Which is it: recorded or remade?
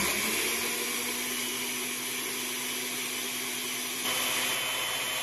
recorded